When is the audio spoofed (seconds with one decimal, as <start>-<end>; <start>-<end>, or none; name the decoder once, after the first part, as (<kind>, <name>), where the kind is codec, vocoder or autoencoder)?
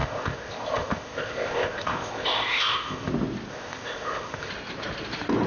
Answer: 0.0-3.1 (codec, ZipCodec); 3.5-4.5